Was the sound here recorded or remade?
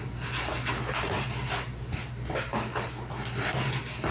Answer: recorded